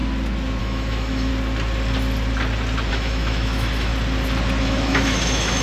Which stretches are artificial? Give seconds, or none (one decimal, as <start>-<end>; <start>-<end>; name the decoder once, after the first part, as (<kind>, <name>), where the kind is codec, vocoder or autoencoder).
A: 0.6-1.3 (autoencoder, DAC-VAE); 2.9-3.9; 4.6-5.6